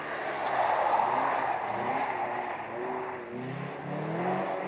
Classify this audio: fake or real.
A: real